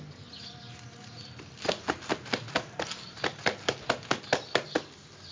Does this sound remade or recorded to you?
recorded